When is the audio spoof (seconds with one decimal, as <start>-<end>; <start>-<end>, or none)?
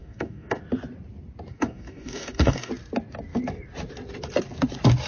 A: 0.0-0.6; 1.5-2.7